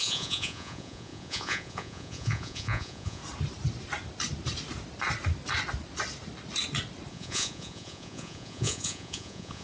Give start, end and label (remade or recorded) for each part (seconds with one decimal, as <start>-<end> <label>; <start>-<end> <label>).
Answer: 0.0-3.2 remade; 3.2-7.1 recorded; 7.1-9.6 remade